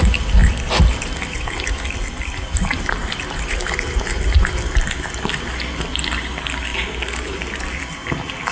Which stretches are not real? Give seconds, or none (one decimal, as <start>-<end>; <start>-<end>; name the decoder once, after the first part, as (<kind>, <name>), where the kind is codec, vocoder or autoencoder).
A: 0.4-3.4 (vocoder, BigVGAN v2); 6.7-7.6